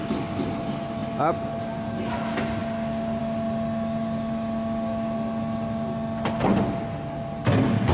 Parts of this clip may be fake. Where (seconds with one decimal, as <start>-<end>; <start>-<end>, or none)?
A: none